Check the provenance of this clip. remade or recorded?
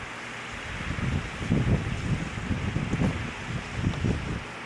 recorded